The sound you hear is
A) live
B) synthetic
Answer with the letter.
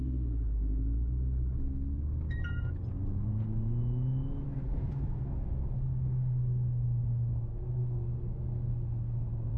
A